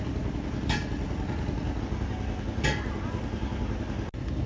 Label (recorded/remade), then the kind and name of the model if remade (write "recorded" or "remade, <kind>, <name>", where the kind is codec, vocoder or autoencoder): recorded